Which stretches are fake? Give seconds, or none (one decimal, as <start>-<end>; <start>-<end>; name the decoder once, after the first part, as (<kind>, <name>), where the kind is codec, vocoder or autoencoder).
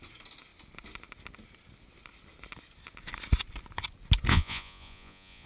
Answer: 4.3-5.5 (vocoder, Vocos)